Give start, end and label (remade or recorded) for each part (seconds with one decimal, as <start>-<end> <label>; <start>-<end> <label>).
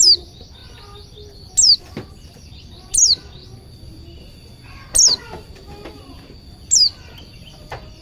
0.0-8.0 recorded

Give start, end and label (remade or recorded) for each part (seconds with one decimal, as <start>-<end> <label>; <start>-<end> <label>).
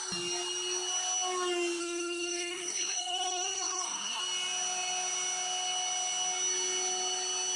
0.0-1.8 recorded; 1.8-4.2 remade; 4.2-7.6 recorded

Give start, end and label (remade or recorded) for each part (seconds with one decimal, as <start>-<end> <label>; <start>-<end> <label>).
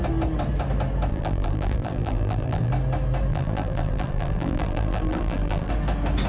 0.0-1.1 recorded; 1.1-2.7 remade; 2.7-3.3 recorded; 3.3-5.7 remade; 5.7-6.3 recorded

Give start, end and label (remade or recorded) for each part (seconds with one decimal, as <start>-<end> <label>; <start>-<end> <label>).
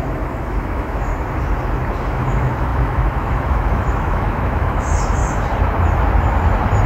0.0-1.1 remade; 1.1-2.0 recorded; 2.0-5.2 remade; 5.2-6.9 recorded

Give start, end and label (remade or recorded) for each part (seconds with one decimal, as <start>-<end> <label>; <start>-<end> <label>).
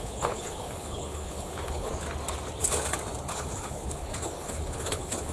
0.0-1.9 remade; 1.9-3.3 recorded; 3.3-5.3 remade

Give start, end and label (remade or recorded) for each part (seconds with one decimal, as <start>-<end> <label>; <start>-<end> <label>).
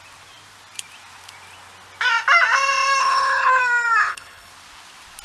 0.0-3.0 recorded; 3.0-3.6 remade; 3.6-4.0 recorded; 4.0-4.5 remade; 4.5-5.2 recorded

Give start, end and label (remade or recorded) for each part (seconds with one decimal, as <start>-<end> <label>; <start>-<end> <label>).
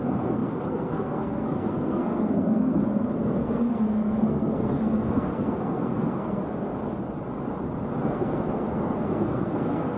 0.0-6.7 remade; 6.7-8.0 recorded; 8.0-10.0 remade